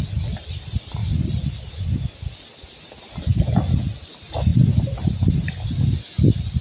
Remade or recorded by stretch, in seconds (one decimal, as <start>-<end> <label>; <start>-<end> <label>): 0.0-6.6 recorded